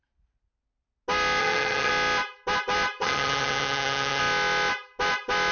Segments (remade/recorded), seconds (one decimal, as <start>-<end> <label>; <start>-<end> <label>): 0.0-1.4 recorded; 1.4-1.9 remade; 1.9-3.0 recorded; 3.0-4.2 remade; 4.2-5.5 recorded